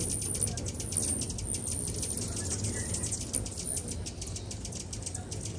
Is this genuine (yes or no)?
yes